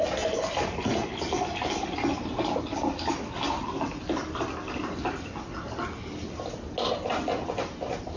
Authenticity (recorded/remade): recorded